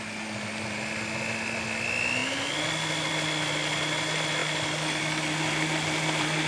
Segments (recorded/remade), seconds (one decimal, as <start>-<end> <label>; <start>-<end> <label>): 0.0-6.5 recorded

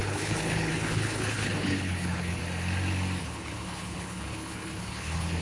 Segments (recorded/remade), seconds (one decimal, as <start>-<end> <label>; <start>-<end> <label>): 0.0-2.4 remade; 2.4-3.2 recorded; 3.2-5.4 remade

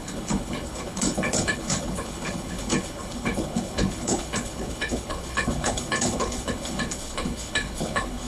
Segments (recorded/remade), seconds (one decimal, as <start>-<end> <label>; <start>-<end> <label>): 0.0-8.3 remade